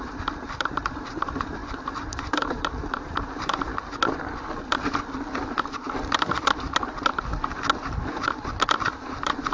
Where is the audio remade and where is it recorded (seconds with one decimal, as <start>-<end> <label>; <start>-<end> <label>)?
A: 0.0-3.7 remade; 3.7-8.8 recorded; 8.8-9.5 remade